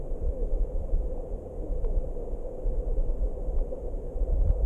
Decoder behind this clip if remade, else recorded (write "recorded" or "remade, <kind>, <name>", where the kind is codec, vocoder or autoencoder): recorded